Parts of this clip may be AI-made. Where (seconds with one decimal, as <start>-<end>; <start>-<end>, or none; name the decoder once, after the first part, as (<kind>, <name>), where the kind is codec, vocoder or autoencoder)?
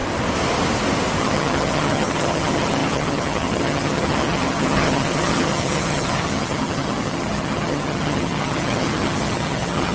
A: 1.2-9.9 (vocoder, HiFi-GAN)